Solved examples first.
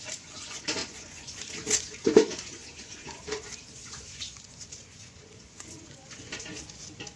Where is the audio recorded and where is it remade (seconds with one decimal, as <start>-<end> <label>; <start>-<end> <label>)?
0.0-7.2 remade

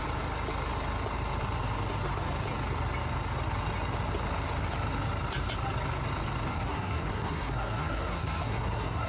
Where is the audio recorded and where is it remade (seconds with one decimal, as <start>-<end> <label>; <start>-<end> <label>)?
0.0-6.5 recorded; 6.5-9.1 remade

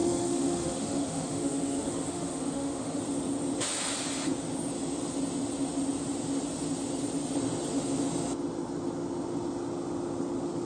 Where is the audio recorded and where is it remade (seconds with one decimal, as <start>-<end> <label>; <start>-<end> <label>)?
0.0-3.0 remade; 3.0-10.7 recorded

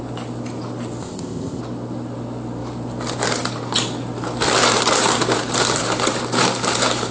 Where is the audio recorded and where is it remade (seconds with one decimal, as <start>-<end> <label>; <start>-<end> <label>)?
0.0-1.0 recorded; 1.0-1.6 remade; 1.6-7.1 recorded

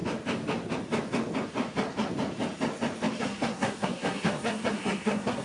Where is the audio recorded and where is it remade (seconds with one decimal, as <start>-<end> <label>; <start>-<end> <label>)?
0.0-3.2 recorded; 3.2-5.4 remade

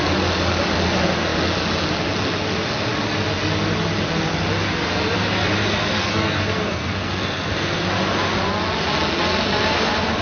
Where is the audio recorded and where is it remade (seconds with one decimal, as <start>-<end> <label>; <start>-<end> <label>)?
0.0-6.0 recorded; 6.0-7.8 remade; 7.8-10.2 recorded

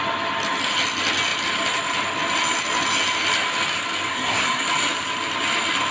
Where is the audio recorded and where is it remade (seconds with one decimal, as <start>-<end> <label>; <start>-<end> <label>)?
0.0-4.1 recorded; 4.1-4.6 remade; 4.6-5.9 recorded

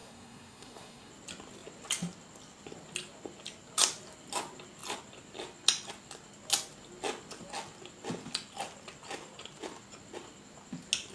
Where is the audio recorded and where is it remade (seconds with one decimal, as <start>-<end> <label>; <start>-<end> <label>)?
0.0-1.1 remade; 1.1-11.1 recorded